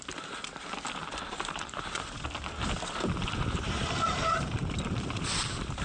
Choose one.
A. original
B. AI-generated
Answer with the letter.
B